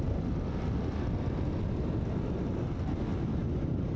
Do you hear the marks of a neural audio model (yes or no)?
no